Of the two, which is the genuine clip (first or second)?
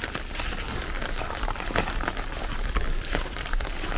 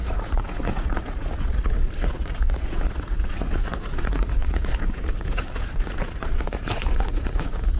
first